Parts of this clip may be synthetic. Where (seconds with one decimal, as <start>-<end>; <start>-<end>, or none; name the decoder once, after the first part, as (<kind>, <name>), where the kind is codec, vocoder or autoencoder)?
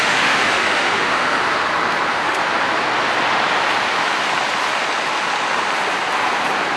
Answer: 0.0-1.4 (autoencoder, DAC-VAE); 2.1-2.5